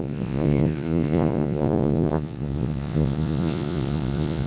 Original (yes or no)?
no